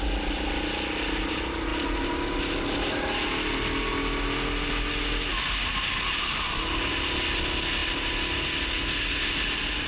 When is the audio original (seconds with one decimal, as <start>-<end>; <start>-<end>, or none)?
0.0-9.9